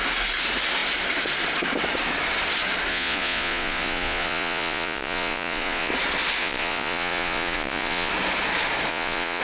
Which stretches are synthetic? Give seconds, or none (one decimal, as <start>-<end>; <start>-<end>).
2.9-5.9; 6.4-8.1; 8.9-9.4